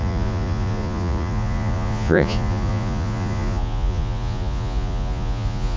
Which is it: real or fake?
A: fake